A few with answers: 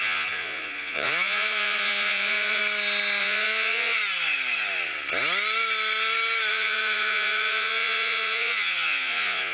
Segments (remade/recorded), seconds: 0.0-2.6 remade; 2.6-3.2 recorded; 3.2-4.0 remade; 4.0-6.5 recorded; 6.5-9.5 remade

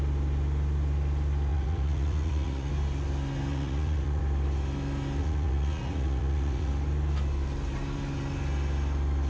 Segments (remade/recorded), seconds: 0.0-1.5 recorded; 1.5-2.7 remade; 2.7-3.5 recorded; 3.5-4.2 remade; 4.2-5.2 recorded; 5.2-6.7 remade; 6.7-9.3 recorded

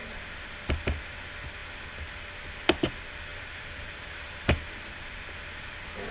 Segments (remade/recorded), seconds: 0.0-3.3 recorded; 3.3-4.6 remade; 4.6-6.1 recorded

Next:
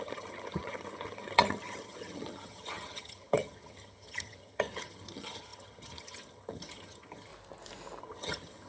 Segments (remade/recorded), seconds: 0.0-7.3 remade; 7.3-8.0 recorded; 8.0-8.7 remade